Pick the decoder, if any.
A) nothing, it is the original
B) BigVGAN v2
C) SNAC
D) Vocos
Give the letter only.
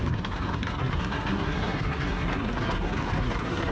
C